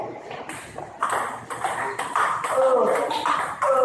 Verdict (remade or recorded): recorded